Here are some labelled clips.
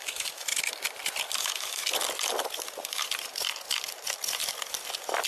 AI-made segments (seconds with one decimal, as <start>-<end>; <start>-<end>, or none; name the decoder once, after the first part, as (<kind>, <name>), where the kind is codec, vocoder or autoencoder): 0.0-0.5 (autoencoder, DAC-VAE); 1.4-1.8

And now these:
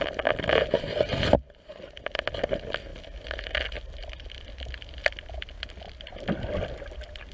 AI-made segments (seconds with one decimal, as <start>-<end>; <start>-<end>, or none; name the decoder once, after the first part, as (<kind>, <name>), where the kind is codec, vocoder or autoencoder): none

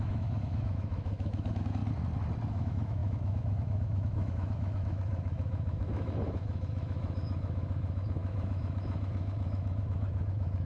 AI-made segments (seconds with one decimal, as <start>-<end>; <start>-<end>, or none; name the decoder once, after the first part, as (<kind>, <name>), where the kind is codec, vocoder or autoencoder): 0.0-1.8 (autoencoder, DAC-VAE); 2.5-10.7

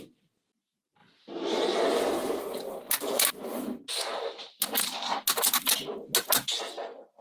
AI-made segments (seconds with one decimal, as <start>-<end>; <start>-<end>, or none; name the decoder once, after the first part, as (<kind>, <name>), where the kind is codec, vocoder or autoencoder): none

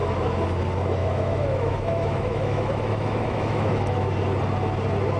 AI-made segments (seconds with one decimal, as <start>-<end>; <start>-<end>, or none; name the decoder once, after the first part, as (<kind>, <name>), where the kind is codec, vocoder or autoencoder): 1.0-4.1 (autoencoder, DAC-VAE)

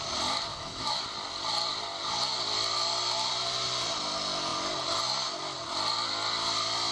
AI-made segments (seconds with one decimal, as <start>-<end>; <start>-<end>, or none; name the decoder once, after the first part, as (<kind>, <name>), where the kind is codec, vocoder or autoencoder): 0.5-1.0 (autoencoder, DAC-VAE)

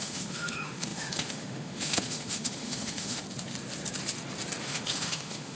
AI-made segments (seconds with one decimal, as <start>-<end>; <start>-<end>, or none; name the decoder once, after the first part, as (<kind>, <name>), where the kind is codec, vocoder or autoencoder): 0.0-3.2 (autoencoder, DAC-VAE); 4.6-5.5